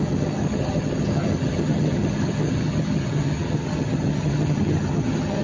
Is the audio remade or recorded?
remade